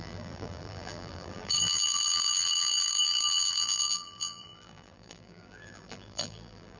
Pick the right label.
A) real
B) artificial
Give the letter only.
B